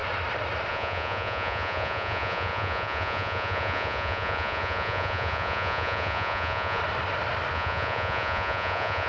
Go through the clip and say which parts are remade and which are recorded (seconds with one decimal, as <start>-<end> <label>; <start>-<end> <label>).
0.0-0.7 recorded; 0.7-6.8 remade; 6.8-7.5 recorded; 7.5-9.1 remade